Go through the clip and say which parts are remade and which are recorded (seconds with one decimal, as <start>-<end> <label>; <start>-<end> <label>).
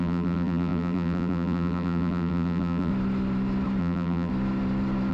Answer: 0.0-2.9 remade; 2.9-3.8 recorded; 3.8-4.3 remade; 4.3-5.1 recorded